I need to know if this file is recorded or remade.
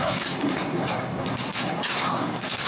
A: remade